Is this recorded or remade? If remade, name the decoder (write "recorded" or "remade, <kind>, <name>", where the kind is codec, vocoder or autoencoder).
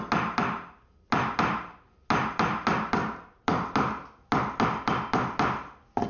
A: recorded